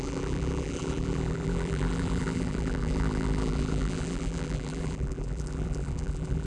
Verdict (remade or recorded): remade